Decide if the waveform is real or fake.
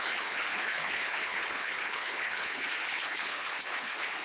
fake